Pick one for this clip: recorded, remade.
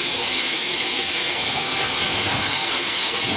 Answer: remade